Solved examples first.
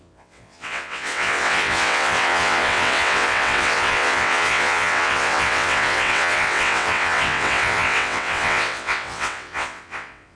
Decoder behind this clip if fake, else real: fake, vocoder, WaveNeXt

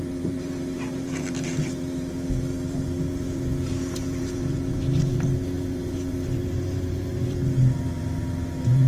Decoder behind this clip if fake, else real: fake, vocoder, BigVGAN v2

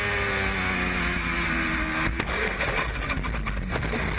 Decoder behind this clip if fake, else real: real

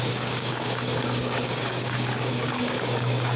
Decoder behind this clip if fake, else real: fake, codec, DAC